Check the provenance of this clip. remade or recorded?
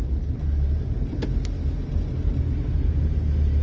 recorded